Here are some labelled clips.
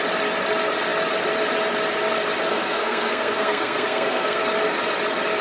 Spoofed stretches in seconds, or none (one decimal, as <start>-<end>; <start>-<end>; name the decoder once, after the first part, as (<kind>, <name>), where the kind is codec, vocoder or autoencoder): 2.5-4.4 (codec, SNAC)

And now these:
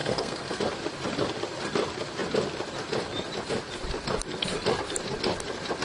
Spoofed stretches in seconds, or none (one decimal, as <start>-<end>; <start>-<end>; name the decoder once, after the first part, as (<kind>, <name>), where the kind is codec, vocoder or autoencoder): 0.0-0.6 (codec, SNAC)

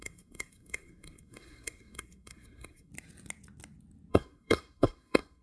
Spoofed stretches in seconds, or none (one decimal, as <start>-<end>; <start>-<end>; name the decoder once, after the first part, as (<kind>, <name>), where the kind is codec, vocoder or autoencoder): 0.0-2.9 (codec, SNAC); 4.1-5.4

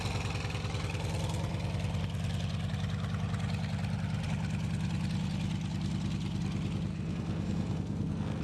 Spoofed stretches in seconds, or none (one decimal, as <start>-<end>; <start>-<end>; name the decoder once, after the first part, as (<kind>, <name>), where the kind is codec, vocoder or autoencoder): 6.9-8.4 (codec, SNAC)

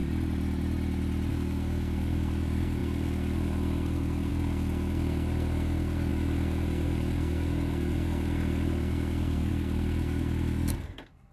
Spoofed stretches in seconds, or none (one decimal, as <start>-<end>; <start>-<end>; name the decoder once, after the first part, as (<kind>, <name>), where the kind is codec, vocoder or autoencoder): 1.3-11.3 (codec, SNAC)

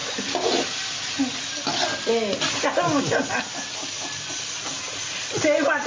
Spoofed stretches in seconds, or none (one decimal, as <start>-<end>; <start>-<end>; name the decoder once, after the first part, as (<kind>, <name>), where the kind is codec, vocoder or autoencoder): none